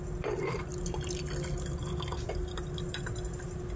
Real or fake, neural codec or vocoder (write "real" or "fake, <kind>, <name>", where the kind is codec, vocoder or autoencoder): real